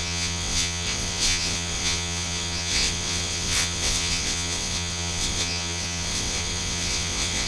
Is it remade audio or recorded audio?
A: remade